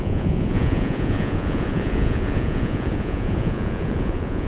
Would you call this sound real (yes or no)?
no